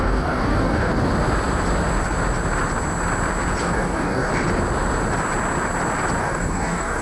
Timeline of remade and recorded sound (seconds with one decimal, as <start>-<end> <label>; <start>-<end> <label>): 0.0-0.9 remade; 0.9-3.6 recorded; 3.6-4.3 remade; 4.3-6.2 recorded; 6.2-7.0 remade